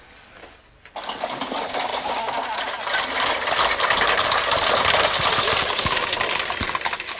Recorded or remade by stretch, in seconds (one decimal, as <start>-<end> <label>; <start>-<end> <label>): 0.0-7.2 recorded